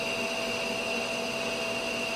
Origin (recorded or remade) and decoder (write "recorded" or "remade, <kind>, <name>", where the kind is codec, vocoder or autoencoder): recorded